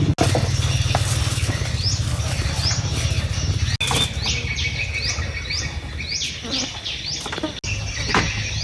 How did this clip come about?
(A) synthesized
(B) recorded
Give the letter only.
B